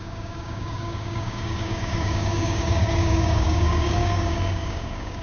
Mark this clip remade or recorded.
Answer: remade